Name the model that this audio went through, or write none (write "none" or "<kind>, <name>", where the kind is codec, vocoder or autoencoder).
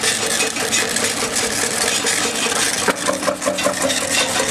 none